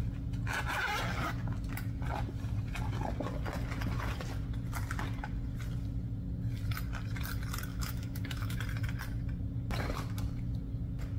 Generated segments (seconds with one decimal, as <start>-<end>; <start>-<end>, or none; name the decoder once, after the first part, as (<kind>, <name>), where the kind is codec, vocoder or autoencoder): 7.7-8.6 (autoencoder, DAC-VAE)